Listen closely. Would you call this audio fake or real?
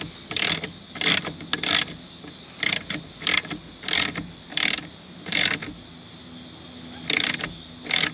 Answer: real